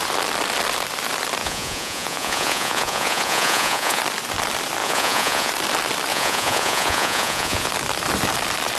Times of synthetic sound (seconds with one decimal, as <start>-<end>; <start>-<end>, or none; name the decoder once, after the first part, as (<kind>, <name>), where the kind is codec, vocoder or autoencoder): 1.4-4.0 (vocoder, Vocos); 4.8-5.5; 6.1-7.7